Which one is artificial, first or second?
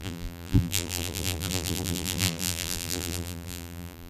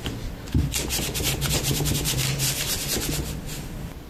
first